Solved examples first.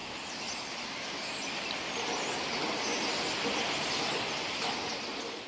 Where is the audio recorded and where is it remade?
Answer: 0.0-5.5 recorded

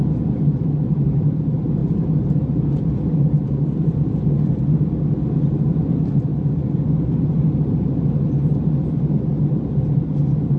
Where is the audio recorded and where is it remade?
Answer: 0.0-10.6 recorded

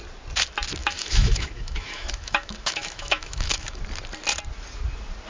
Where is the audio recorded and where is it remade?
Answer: 0.0-0.8 recorded; 0.8-3.8 remade; 3.8-5.3 recorded

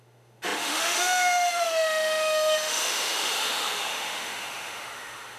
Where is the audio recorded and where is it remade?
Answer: 0.0-5.4 remade

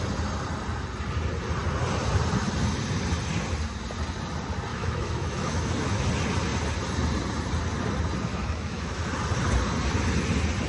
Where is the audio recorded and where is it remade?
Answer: 0.0-4.7 recorded; 4.7-6.1 remade; 6.1-8.3 recorded; 8.3-9.0 remade; 9.0-10.7 recorded

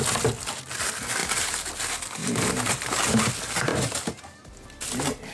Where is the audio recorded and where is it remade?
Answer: 0.0-1.2 recorded; 1.2-1.7 remade; 1.7-2.2 recorded; 2.2-3.3 remade; 3.3-3.7 recorded; 3.7-4.5 remade; 4.5-5.3 recorded

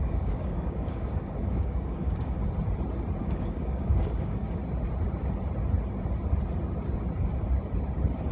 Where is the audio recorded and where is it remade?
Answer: 0.0-2.4 remade; 2.4-3.2 recorded; 3.2-4.6 remade; 4.6-8.3 recorded